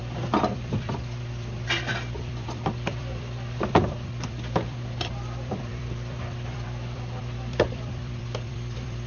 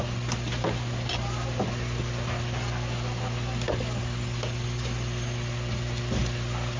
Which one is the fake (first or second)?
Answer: first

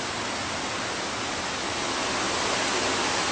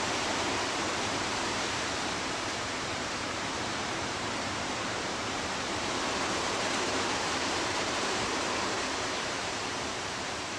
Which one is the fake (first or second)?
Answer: second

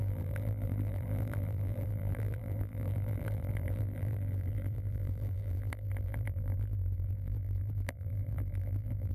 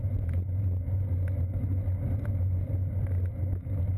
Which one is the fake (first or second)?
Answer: first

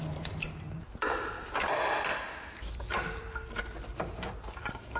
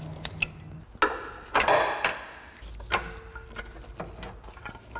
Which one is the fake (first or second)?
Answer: first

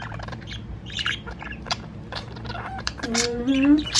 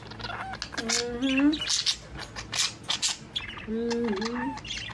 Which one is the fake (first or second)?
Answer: first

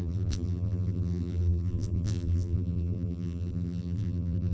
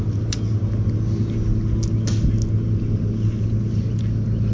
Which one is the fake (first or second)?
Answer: first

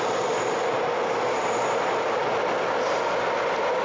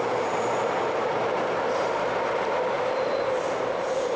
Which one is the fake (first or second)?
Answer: second